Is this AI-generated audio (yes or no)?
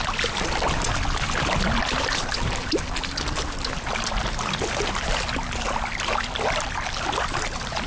no